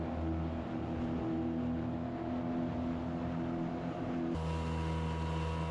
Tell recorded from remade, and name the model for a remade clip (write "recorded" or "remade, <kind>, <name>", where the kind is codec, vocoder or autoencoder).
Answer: recorded